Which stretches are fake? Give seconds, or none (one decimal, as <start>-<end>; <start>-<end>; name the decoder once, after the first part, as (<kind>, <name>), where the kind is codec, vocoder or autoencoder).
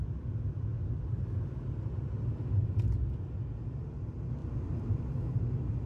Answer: 4.4-5.0 (vocoder, BigVGAN v2)